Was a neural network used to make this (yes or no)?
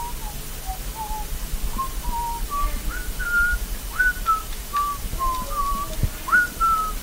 no